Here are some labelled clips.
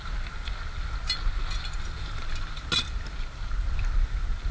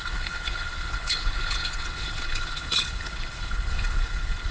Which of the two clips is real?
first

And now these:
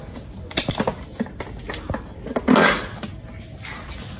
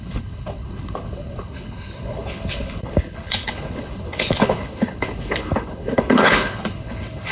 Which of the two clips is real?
first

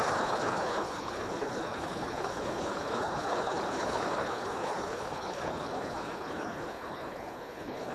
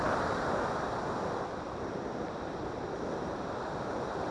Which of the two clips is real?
second